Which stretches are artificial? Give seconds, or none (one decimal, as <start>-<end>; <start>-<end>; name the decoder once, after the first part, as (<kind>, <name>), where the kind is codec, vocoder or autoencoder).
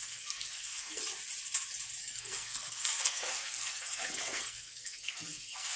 0.0-1.0 (codec, SNAC); 2.0-5.8